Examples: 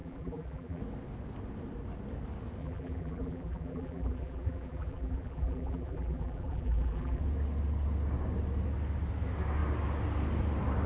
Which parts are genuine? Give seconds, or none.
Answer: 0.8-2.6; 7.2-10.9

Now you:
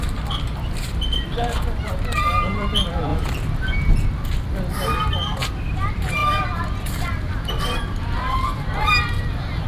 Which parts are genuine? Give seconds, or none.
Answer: 3.1-3.9

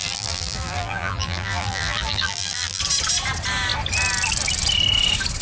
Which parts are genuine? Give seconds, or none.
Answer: 2.8-5.4

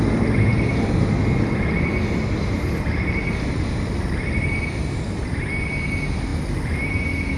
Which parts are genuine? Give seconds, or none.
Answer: 0.0-0.5; 4.6-6.3; 7.0-7.4